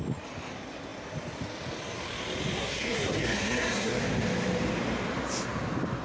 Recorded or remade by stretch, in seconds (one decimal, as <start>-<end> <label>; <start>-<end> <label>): 0.0-2.6 recorded; 2.6-4.0 remade; 4.0-6.0 recorded